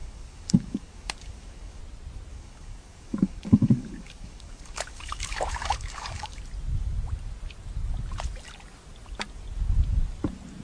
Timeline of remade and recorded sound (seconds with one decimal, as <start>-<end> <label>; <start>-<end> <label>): 0.0-1.8 remade; 1.8-2.3 recorded; 2.3-6.4 remade; 6.4-10.6 recorded